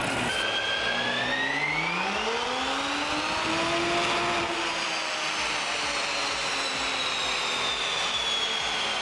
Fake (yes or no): no